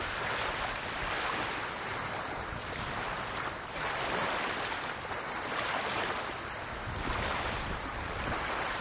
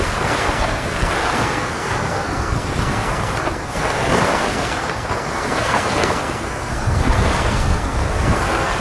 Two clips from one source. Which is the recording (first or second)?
first